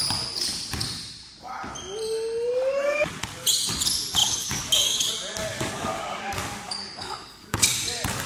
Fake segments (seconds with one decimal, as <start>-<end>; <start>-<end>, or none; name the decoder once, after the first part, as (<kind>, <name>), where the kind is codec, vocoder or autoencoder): 4.2-5.1 (codec, DAC); 5.5-7.7